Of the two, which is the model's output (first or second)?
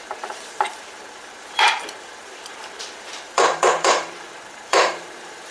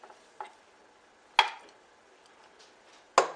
first